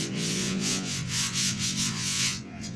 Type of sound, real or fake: fake